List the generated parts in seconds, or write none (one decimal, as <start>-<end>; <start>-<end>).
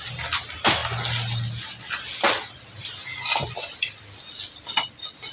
none